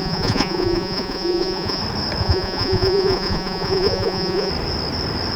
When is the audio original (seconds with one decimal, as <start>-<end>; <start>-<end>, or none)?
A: 1.8-2.2; 4.5-5.4